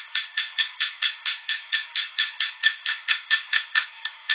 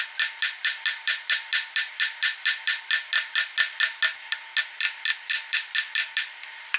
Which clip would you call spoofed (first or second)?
first